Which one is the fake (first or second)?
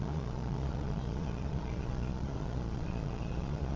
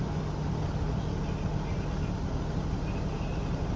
first